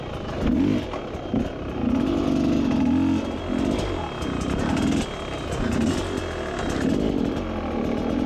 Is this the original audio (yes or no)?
yes